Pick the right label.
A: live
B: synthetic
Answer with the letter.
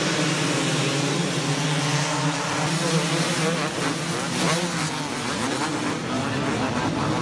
A